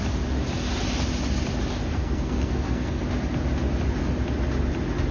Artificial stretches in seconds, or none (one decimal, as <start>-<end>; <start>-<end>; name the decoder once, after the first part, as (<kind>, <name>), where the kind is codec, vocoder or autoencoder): 1.9-3.0 (codec, SNAC)